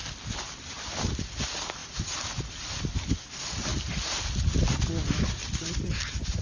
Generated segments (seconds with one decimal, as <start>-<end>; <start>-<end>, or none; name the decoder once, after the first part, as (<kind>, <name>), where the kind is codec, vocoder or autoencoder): 0.0-3.7 (vocoder, BigVGAN v2); 4.8-6.4